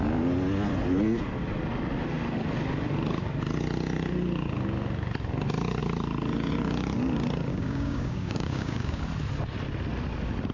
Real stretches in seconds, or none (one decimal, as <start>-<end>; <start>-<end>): 0.0-7.5; 9.0-10.5